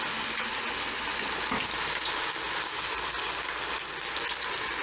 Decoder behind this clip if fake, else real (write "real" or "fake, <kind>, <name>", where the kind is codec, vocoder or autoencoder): real